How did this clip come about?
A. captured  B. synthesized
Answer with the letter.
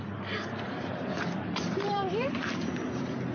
B